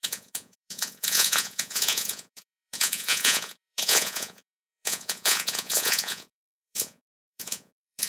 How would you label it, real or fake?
fake